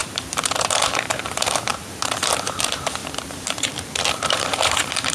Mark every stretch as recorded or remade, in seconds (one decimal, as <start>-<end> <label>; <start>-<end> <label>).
0.0-5.1 remade